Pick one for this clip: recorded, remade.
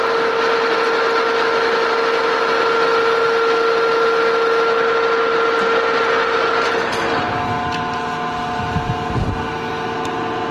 recorded